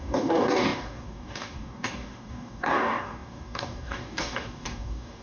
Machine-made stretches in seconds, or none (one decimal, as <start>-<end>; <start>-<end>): 0.0-5.2